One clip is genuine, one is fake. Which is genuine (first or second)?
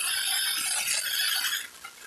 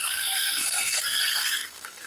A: first